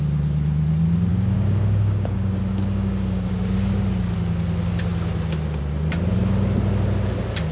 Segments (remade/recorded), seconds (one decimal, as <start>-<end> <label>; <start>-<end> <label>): 0.0-1.1 recorded; 1.1-3.3 remade; 3.3-7.5 recorded